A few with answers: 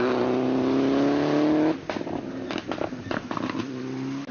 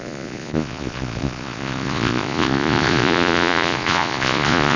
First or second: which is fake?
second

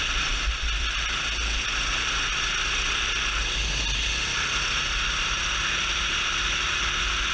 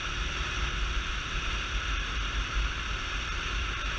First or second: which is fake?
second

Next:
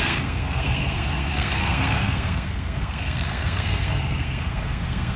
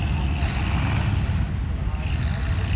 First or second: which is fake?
first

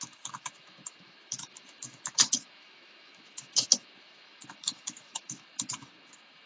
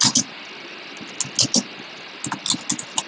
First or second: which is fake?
first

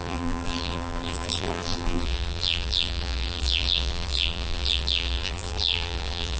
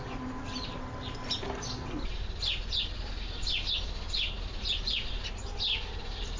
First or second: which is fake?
first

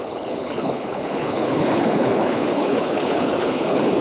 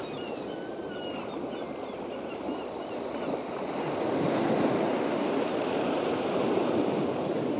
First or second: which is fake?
first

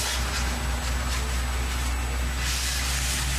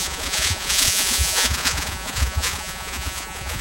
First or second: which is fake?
second